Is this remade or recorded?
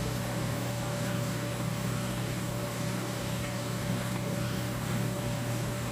remade